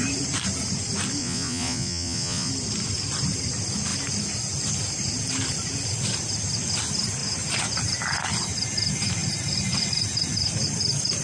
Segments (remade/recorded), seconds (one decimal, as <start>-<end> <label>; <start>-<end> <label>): 0.0-1.2 recorded; 1.2-2.5 remade; 2.5-11.2 recorded